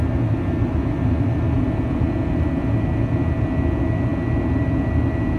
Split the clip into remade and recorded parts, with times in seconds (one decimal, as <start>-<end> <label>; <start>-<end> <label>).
0.0-5.4 recorded